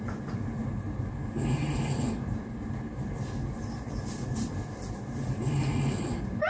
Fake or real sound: real